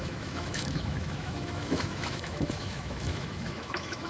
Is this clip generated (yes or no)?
yes